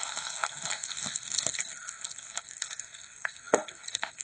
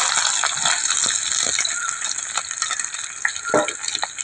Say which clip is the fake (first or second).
first